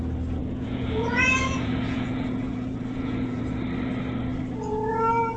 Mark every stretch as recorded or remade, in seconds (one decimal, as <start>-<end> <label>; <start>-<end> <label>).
0.0-0.4 recorded; 0.4-3.4 remade; 3.4-5.4 recorded